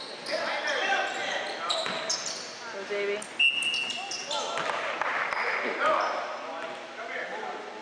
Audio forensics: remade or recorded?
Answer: recorded